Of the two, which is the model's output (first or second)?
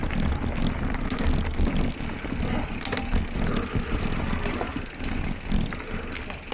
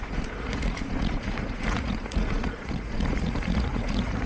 second